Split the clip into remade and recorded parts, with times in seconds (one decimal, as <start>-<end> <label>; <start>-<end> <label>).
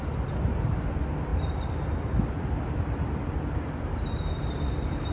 0.0-1.3 recorded; 1.3-4.4 remade; 4.4-5.1 recorded